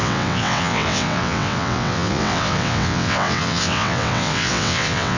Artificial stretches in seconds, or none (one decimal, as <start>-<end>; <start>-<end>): 0.0-5.2